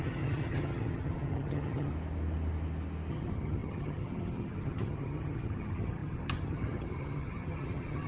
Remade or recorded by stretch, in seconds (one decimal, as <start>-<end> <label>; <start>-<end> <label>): 0.0-1.9 remade; 1.9-3.1 recorded; 3.1-8.1 remade